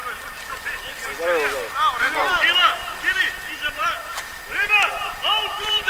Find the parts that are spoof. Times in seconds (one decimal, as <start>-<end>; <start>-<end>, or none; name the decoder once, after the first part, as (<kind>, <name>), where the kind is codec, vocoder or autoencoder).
3.5-5.9 (vocoder, BigVGAN v2)